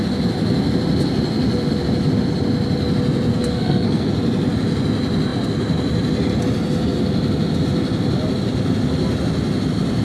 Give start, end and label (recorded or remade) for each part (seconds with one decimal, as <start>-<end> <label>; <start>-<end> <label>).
0.0-3.3 recorded; 3.3-4.1 remade; 4.1-10.0 recorded